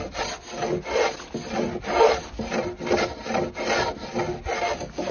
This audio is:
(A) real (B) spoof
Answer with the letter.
A